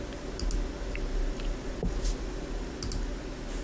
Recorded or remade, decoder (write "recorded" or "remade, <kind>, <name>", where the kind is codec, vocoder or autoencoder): recorded